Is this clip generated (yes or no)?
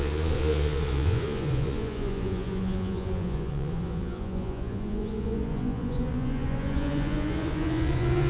yes